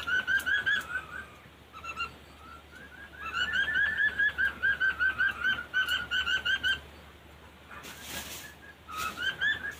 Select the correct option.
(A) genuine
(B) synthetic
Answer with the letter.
A